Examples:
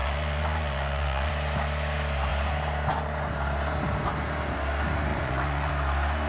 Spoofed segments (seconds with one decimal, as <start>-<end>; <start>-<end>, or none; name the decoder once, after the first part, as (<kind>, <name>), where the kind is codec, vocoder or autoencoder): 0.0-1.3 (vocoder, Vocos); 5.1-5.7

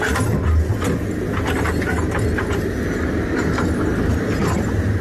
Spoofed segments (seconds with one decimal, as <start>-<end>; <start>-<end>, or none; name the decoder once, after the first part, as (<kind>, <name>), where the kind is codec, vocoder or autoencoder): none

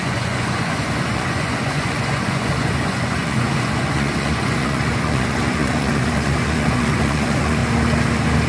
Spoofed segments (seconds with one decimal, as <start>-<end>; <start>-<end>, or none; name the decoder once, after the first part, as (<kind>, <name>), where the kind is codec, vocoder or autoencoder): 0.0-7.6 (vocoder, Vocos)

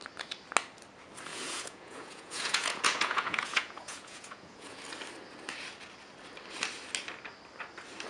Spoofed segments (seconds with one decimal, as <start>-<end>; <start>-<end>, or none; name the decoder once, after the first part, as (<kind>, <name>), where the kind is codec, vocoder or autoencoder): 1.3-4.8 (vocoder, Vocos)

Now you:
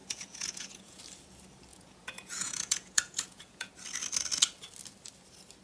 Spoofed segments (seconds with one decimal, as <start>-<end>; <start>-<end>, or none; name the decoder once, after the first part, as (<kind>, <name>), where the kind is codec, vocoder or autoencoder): 0.0-1.0 (vocoder, Vocos); 1.7-3.7